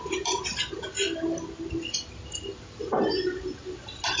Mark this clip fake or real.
real